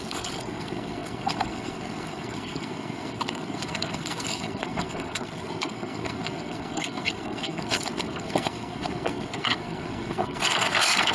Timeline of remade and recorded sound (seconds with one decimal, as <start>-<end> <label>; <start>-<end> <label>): 0.0-11.1 remade